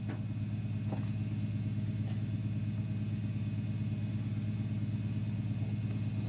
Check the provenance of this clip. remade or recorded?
recorded